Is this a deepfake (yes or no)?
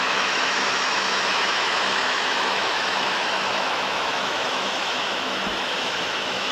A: yes